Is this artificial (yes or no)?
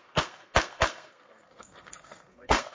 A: yes